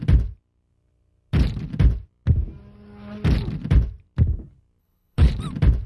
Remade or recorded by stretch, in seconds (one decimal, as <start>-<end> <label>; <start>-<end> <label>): 0.0-4.8 recorded; 4.8-5.3 remade; 5.3-5.9 recorded